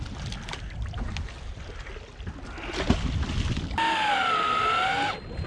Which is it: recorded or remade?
recorded